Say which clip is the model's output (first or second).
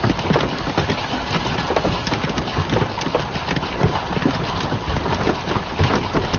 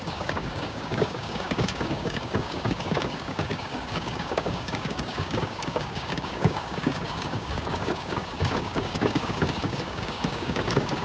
second